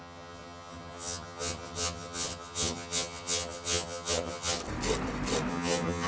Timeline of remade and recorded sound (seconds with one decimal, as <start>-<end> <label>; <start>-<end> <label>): 0.0-4.6 remade; 4.6-5.5 recorded; 5.5-6.1 remade